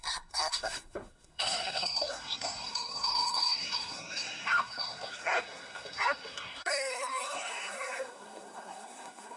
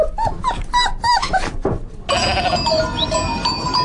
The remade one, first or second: first